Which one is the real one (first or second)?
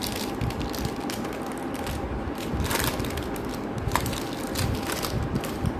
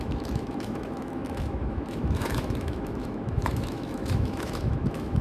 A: first